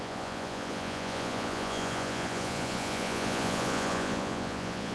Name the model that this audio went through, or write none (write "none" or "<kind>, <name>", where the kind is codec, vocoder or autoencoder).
vocoder, Vocos